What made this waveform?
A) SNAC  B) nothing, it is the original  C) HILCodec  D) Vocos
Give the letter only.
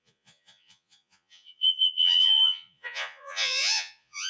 D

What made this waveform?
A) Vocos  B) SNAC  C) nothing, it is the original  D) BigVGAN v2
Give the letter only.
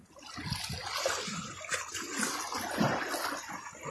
C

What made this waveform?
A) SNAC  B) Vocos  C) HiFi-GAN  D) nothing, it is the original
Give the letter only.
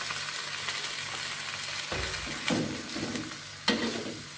D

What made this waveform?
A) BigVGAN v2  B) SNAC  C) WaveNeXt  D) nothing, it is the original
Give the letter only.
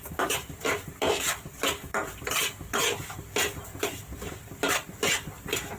A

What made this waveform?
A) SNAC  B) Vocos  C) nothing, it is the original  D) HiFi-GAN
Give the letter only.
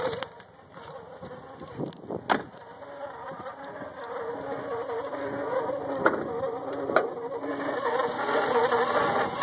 C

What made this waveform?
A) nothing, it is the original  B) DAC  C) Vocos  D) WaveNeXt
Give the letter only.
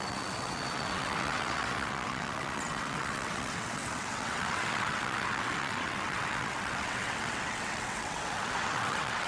D